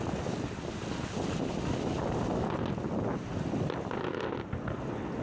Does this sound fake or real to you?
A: real